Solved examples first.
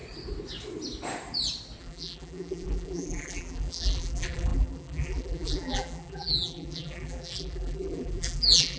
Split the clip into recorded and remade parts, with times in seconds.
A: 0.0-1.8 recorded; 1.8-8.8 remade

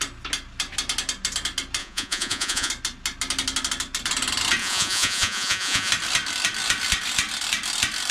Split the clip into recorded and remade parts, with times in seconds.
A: 0.0-1.8 recorded; 1.8-2.7 remade; 2.7-4.6 recorded; 4.6-5.9 remade; 5.9-8.1 recorded

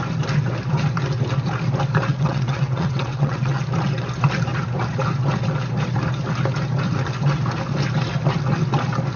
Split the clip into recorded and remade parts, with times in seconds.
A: 0.0-2.1 recorded; 2.1-3.6 remade; 3.6-9.2 recorded

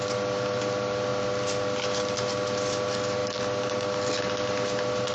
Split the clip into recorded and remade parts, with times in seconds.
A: 0.0-5.1 recorded